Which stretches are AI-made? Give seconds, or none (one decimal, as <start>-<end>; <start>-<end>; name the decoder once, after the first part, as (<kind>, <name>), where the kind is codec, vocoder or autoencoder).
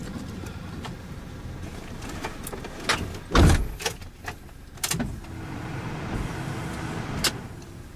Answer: 0.0-1.1 (vocoder, BigVGAN v2)